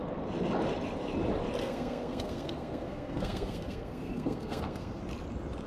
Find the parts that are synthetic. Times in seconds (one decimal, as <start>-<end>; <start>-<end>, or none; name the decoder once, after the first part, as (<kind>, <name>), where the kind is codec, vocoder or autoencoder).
1.6-5.0 (codec, SNAC)